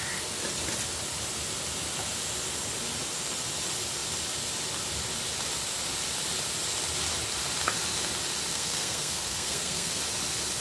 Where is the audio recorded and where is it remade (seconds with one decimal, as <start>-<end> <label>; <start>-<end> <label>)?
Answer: 0.0-8.5 recorded; 8.5-10.0 remade; 10.0-10.6 recorded